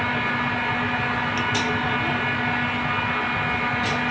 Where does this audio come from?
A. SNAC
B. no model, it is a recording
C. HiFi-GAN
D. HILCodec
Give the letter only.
B